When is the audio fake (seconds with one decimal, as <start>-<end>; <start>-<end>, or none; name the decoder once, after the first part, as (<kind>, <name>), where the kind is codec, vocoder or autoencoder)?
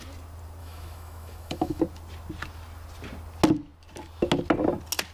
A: 0.6-1.8 (autoencoder, DAC-VAE)